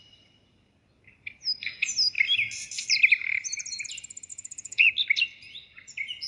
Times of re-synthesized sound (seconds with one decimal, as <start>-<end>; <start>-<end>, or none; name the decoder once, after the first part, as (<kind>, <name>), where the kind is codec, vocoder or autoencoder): 4.3-4.9 (vocoder, Vocos)